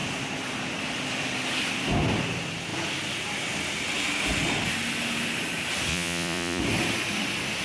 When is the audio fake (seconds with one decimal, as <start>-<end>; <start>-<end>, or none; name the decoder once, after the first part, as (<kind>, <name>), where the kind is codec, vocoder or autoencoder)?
5.9-6.6 (vocoder, Vocos)